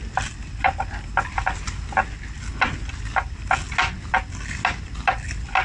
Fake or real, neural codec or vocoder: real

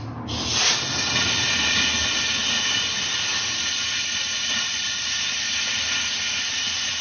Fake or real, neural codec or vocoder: real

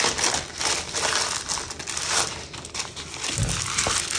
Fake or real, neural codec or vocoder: real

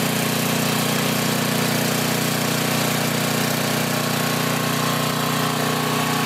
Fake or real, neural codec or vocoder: real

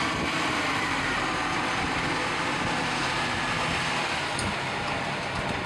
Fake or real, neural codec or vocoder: fake, vocoder, BigVGAN v2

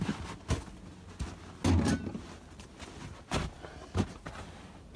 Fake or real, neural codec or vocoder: real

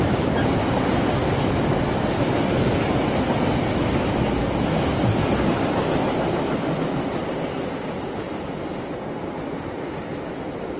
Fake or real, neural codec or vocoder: real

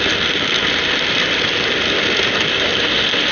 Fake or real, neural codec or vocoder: real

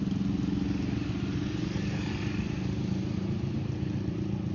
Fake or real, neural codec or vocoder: real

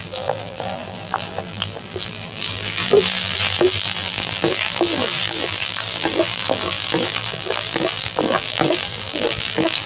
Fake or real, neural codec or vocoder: fake, vocoder, BigVGAN v2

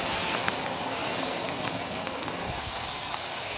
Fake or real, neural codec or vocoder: fake, codec, SNAC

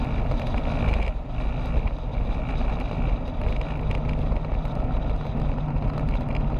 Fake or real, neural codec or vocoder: real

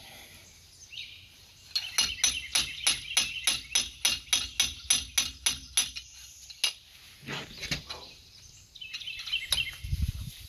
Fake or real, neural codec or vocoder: real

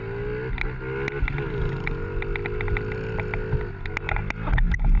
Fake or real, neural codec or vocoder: real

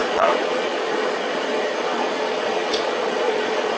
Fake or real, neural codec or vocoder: fake, vocoder, Vocos